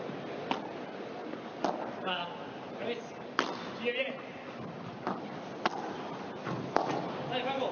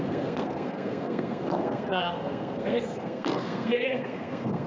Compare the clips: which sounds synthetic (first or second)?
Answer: second